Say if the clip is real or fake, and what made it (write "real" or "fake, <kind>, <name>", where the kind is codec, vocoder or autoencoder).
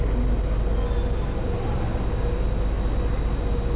real